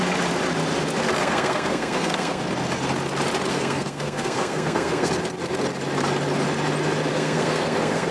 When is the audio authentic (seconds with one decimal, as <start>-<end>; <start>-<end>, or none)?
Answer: 0.0-1.2; 2.4-3.5; 5.1-7.1